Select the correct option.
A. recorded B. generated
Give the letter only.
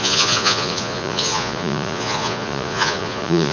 B